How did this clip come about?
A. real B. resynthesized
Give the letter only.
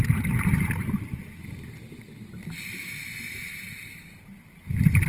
A